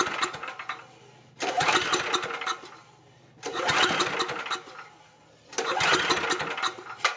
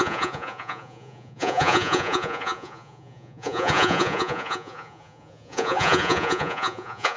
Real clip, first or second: first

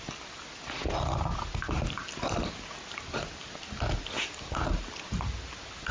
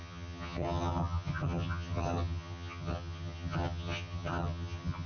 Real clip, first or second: first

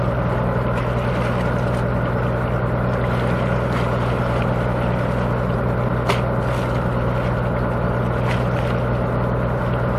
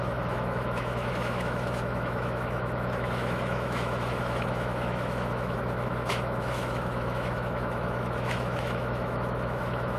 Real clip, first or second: first